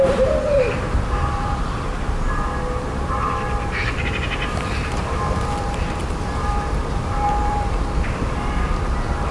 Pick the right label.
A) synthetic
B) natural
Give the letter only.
A